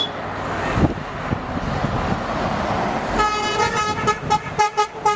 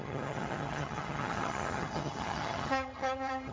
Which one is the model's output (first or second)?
second